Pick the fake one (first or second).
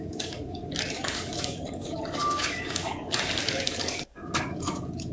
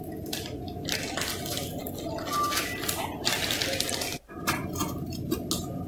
first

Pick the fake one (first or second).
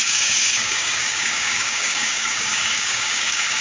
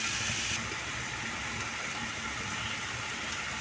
first